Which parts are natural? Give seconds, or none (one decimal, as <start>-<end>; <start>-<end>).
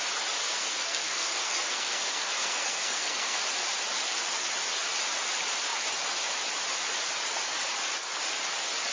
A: 0.0-0.4; 3.4-8.9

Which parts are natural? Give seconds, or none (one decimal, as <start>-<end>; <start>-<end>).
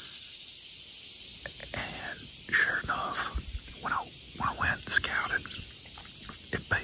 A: 0.0-6.8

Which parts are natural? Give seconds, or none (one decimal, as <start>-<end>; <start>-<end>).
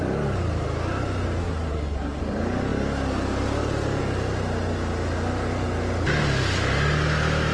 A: 0.0-1.4; 2.2-7.5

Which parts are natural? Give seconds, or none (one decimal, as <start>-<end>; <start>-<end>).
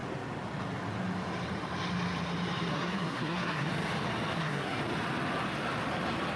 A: 0.0-2.7; 3.7-4.3; 4.8-6.4